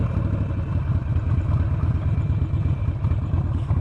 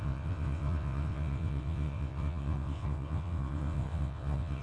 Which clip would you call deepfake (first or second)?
second